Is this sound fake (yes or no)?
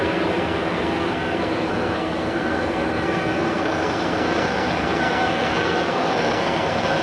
yes